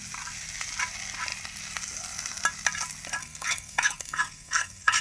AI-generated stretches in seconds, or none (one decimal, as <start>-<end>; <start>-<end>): 3.2-5.0